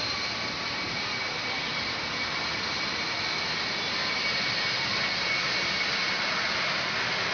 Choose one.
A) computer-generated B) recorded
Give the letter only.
B